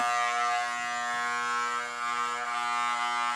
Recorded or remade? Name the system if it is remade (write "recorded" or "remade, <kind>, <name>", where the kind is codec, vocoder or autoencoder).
recorded